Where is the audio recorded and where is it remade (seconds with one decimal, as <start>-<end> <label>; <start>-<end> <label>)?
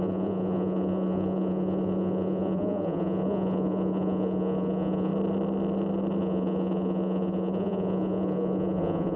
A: 0.0-5.1 remade; 5.1-6.2 recorded; 6.2-9.2 remade